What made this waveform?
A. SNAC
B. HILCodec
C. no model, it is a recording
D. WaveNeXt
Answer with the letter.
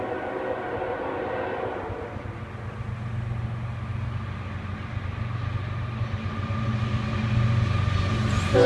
C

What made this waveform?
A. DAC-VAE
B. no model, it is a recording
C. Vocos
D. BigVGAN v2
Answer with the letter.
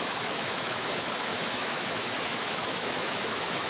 A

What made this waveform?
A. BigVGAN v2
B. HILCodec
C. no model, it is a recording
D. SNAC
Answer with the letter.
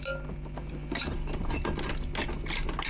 C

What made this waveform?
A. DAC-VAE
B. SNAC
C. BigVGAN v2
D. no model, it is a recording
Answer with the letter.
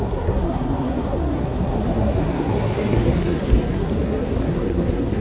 B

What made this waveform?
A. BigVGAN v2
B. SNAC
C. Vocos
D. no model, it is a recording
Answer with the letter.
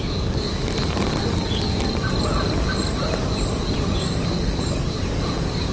D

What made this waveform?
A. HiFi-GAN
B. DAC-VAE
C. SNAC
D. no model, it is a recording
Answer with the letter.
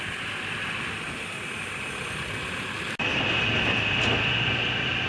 D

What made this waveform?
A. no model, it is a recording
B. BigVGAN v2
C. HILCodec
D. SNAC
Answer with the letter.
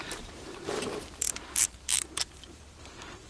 B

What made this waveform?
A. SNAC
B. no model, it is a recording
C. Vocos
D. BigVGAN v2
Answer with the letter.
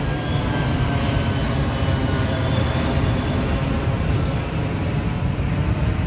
B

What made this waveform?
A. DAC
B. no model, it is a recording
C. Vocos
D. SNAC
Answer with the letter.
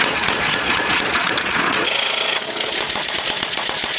C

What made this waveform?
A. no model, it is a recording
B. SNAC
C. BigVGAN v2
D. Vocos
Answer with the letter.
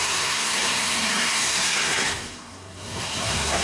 B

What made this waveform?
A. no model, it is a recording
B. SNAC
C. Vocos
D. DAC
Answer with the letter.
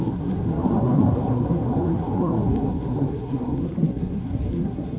B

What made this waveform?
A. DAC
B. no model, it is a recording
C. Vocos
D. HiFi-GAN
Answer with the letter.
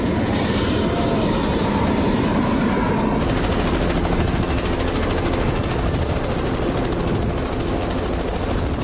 B